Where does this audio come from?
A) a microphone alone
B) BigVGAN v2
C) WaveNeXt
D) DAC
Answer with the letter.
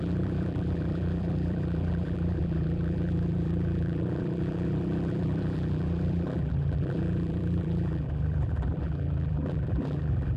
B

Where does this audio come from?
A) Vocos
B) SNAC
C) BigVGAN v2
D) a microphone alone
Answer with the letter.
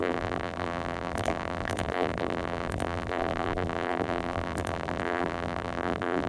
C